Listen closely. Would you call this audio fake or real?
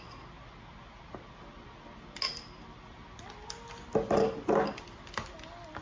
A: real